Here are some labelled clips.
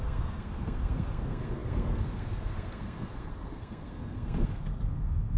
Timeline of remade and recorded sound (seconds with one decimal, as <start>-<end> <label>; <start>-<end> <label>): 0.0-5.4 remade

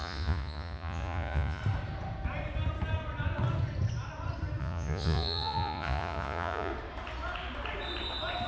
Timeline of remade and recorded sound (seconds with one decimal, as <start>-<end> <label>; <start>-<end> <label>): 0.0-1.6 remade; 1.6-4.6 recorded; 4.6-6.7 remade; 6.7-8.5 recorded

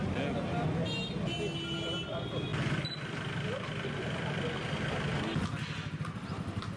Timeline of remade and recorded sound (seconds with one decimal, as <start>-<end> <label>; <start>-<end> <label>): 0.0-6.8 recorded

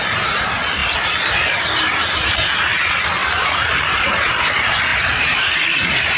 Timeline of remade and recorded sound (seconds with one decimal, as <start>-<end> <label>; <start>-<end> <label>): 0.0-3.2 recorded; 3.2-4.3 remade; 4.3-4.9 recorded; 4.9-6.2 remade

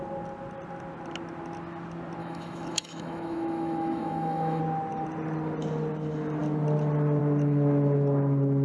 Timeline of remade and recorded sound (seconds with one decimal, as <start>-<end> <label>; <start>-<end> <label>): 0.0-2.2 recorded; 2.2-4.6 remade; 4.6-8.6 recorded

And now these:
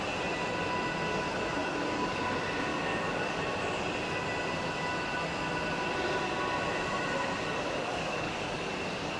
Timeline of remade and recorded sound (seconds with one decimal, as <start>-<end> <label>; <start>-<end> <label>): 0.0-1.6 recorded; 1.6-2.2 remade; 2.2-2.7 recorded; 2.7-3.4 remade; 3.4-7.8 recorded; 7.8-8.7 remade; 8.7-9.2 recorded